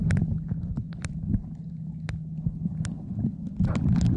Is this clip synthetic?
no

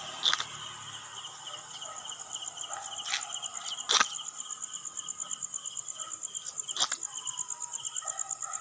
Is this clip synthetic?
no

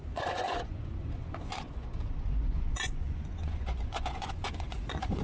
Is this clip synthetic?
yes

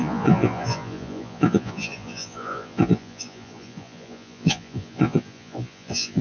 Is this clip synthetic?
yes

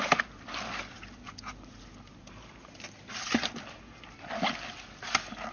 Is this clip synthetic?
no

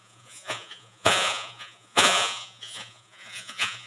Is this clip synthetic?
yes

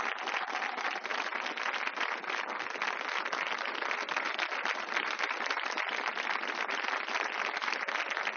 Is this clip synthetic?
no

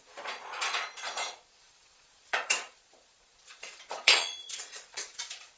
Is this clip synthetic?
yes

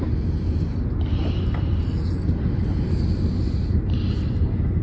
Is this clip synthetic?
no